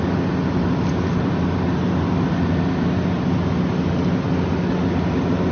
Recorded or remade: recorded